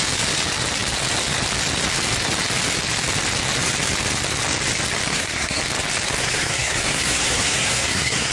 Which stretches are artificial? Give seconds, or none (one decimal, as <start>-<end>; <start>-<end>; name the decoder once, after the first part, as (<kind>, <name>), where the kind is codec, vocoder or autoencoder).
5.1-5.6 (codec, SNAC); 6.2-8.3

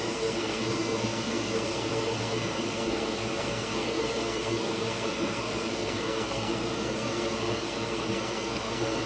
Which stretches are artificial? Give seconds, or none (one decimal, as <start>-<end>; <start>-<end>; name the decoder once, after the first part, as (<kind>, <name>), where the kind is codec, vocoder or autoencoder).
0.0-9.1 (codec, SNAC)

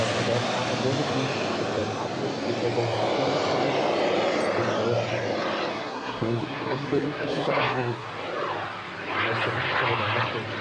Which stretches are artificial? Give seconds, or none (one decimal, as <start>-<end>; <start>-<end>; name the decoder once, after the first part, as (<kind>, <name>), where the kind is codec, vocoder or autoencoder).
5.7-8.1 (codec, SNAC)

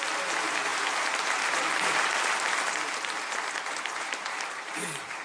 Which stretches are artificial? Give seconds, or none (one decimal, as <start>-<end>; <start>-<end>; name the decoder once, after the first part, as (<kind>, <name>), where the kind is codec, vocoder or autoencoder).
none

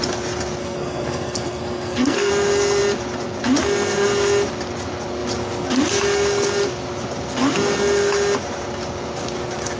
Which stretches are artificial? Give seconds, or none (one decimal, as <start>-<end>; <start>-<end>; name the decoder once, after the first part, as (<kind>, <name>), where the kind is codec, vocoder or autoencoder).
0.6-2.3 (codec, SNAC)

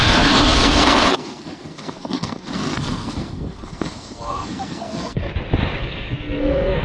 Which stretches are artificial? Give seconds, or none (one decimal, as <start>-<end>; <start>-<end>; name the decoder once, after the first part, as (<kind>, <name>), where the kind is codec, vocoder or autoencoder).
0.0-5.2 (codec, SNAC); 5.8-6.8

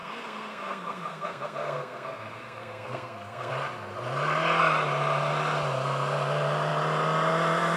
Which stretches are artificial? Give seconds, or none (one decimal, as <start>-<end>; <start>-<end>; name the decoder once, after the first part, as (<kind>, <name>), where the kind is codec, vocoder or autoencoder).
0.0-3.5 (codec, SNAC)

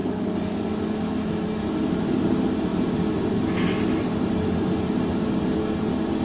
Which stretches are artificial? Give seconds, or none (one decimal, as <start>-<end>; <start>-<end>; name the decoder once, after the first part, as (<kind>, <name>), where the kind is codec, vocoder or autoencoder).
none